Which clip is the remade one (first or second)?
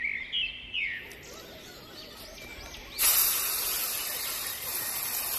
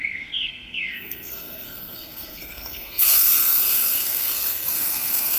second